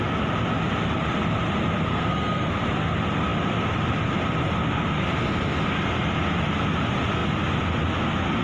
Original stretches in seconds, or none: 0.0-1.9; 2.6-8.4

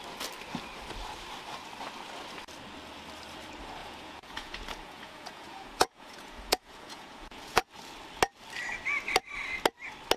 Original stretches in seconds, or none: 0.0-3.8; 7.7-10.2